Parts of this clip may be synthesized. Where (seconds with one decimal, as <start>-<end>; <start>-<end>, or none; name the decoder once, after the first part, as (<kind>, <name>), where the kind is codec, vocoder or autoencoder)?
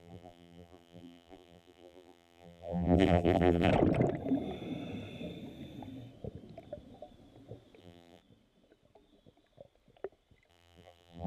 0.0-3.7 (vocoder, BigVGAN v2); 7.8-8.2; 10.5-11.3